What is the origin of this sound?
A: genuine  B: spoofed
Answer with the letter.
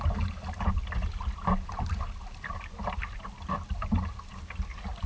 A